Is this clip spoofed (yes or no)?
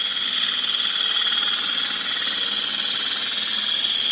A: no